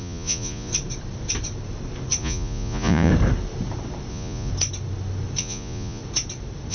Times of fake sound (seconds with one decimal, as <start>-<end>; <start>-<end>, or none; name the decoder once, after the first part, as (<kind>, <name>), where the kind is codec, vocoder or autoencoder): 0.0-0.7 (vocoder, Vocos); 2.2-3.1; 4.1-4.5; 5.4-6.0